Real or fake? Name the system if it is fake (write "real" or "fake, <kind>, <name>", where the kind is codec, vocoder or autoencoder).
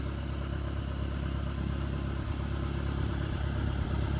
real